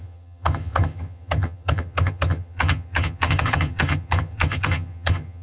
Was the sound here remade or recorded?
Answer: remade